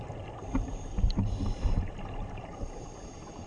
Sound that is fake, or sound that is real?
real